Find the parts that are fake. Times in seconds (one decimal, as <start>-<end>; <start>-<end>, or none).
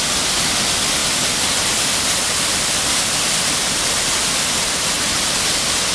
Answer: none